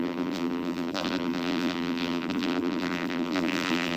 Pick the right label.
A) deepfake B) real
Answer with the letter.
A